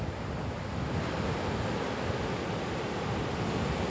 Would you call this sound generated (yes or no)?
no